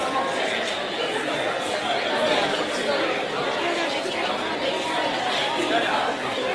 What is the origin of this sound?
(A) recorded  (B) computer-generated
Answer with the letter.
A